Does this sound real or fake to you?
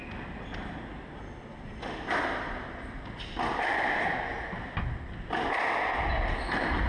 real